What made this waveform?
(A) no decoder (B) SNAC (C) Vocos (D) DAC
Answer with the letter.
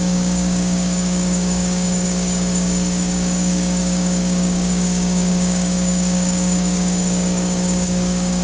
D